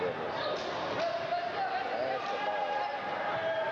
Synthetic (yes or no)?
no